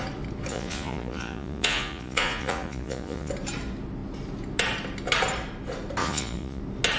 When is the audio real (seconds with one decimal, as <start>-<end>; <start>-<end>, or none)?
0.0-0.5; 3.3-6.0; 6.6-7.0